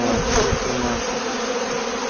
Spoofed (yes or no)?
no